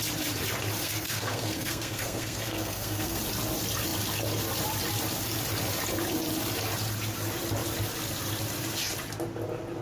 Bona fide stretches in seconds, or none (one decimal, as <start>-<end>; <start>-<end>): 0.0-0.8; 3.2-9.8